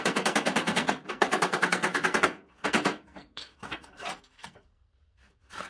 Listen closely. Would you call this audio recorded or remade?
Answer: remade